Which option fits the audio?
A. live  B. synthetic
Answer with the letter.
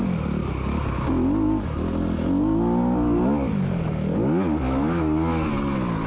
A